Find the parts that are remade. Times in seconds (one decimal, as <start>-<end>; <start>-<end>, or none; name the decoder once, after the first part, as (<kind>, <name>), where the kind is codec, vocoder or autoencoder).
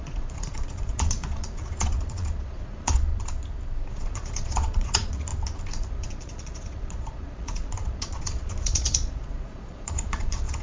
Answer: 0.0-3.1 (vocoder, Vocos); 3.9-5.3; 5.9-10.6